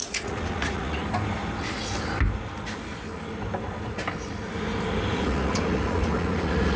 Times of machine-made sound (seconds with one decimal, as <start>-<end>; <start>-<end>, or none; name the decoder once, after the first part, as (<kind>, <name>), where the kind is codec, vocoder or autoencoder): 0.0-1.0 (vocoder, Vocos); 5.1-6.8